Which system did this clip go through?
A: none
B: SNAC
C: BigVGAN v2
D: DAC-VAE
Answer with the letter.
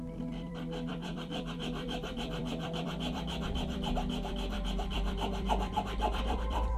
C